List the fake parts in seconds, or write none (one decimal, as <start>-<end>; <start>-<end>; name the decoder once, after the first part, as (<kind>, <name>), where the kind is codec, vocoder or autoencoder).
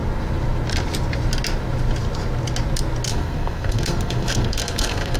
3.1-5.2 (codec, SNAC)